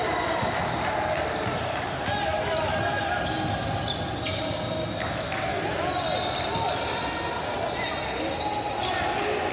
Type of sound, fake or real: real